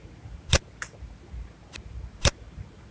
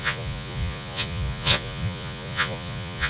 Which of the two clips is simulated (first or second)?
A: second